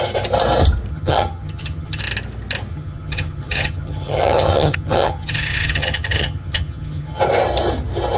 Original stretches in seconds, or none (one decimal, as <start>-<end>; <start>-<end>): 0.0-0.9; 2.0-2.7; 7.2-8.2